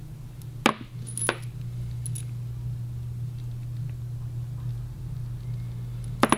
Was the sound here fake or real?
real